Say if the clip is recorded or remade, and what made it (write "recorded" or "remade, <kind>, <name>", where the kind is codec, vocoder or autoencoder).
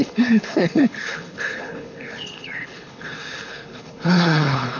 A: remade, codec, HILCodec